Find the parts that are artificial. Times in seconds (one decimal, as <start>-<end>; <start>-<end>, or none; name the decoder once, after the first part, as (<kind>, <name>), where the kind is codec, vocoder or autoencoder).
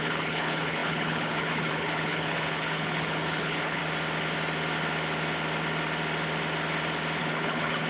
0.0-3.8 (codec, HILCodec); 7.2-7.9